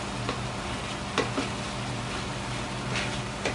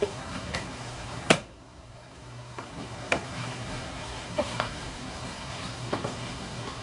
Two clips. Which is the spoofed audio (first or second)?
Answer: second